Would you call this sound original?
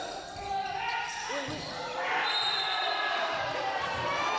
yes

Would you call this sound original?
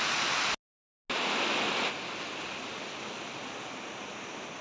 yes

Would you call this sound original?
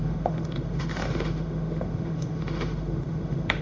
no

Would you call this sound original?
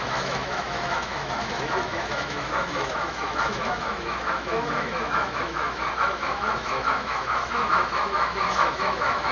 no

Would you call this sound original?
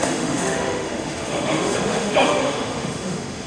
no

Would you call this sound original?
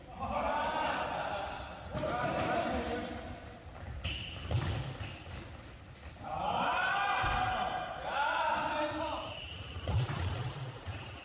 yes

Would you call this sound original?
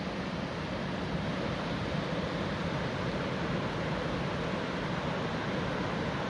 yes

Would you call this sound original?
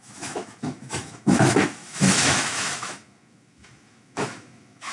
no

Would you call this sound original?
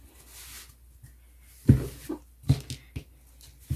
yes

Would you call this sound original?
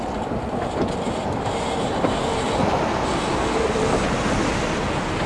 yes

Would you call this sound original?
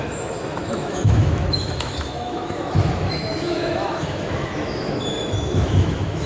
no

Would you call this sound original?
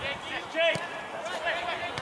yes